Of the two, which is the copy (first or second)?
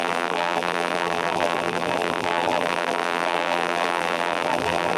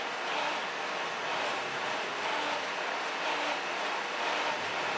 first